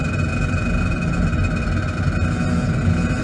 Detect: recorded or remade recorded